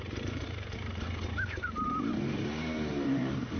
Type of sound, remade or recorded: remade